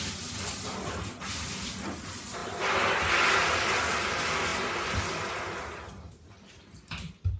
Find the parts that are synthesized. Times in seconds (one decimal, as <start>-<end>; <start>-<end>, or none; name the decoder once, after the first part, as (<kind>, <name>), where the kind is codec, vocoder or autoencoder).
none